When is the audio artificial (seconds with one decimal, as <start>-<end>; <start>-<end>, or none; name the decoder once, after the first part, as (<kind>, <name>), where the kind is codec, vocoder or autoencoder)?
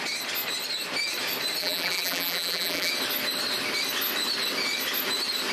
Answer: 1.6-2.9 (vocoder, BigVGAN v2)